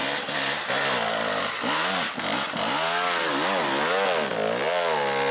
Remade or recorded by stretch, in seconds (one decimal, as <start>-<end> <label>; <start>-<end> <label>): 0.0-5.3 recorded